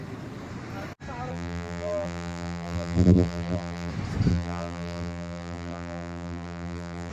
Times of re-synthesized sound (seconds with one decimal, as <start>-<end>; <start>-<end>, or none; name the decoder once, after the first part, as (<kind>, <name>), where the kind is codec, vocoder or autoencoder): 1.3-3.9 (vocoder, BigVGAN v2); 4.3-7.1